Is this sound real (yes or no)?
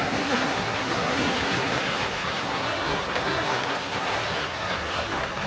no